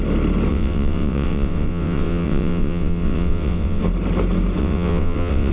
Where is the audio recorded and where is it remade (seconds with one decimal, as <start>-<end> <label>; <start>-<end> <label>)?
0.0-0.5 recorded; 0.5-3.8 remade; 3.8-4.6 recorded; 4.6-5.5 remade